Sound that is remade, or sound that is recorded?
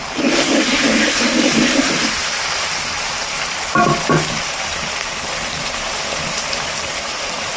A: remade